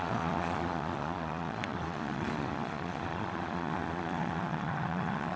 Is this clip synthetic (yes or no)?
yes